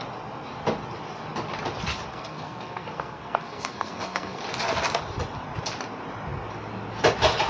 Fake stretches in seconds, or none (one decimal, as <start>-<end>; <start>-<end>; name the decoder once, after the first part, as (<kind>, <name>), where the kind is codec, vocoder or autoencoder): 2.1-4.4 (codec, SNAC)